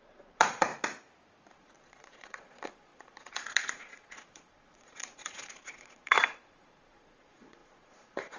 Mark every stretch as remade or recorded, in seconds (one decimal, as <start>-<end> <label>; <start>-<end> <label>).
0.0-0.7 remade; 0.7-1.5 recorded; 1.5-8.4 remade